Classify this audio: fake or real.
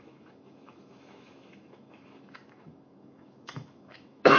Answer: fake